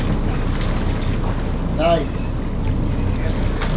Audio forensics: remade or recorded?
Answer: recorded